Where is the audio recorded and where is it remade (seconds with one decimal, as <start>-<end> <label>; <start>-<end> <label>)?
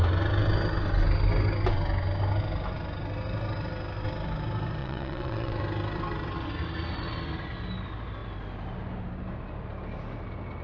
0.0-4.8 recorded; 4.8-5.6 remade; 5.6-10.6 recorded